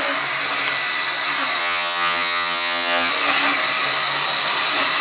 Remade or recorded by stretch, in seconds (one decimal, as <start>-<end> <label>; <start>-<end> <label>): 0.0-1.6 recorded; 1.6-3.1 remade; 3.1-5.0 recorded